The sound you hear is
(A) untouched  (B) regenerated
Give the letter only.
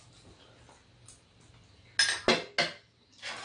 A